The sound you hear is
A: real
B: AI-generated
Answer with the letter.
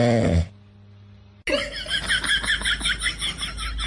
A